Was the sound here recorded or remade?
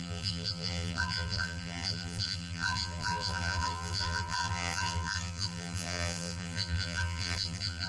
remade